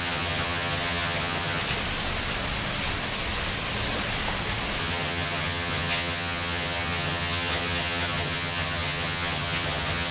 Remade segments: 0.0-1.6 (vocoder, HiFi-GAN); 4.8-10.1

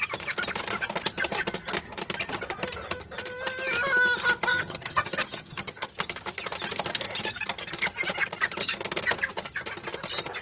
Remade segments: 4.5-5.9 (vocoder, HiFi-GAN)

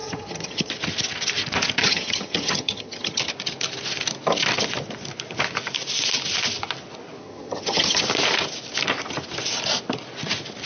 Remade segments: 0.0-0.7 (vocoder, HiFi-GAN); 1.8-3.2; 7.2-8.0

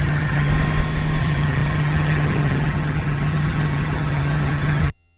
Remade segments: 0.0-0.5 (vocoder, HiFi-GAN); 1.2-5.2

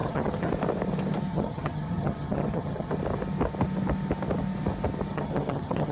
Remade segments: 0.0-0.5 (vocoder, HiFi-GAN); 1.3-2.9; 5.1-5.9

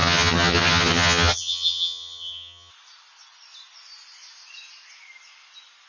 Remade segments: 0.0-2.7 (vocoder, HiFi-GAN)

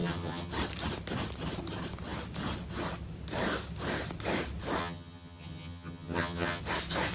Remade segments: 0.0-0.5 (vocoder, HiFi-GAN); 4.8-6.6

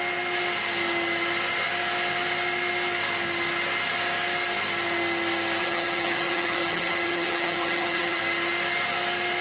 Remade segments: 5.6-8.2 (vocoder, HiFi-GAN)